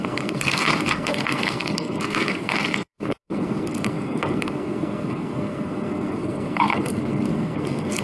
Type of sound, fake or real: fake